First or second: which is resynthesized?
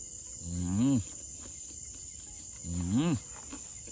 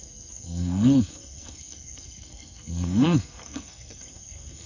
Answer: second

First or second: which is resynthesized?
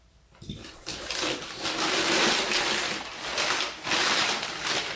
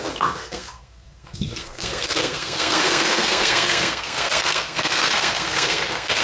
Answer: second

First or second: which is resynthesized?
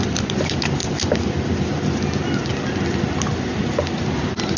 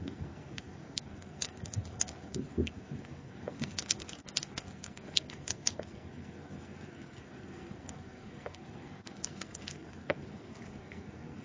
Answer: second